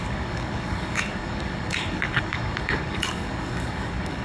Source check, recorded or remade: remade